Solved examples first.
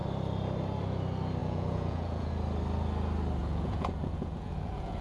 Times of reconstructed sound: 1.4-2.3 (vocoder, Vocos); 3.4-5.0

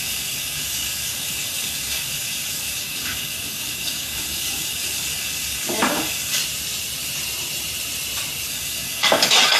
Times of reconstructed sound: 0.0-6.4 (codec, DAC); 8.5-9.6